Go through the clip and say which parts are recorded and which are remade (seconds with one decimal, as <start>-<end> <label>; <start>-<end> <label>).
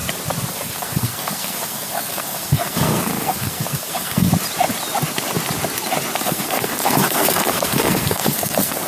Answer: 0.0-0.5 recorded; 0.5-4.3 remade; 4.3-6.2 recorded; 6.2-8.9 remade